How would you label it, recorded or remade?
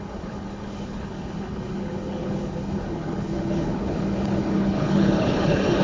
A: remade